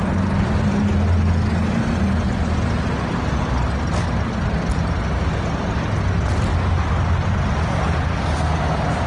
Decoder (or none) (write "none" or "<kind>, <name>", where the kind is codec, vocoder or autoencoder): none